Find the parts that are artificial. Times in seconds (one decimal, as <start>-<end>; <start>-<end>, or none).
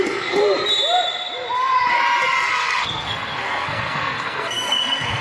0.0-0.4; 2.5-5.2